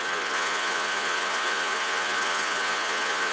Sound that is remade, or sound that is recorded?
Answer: remade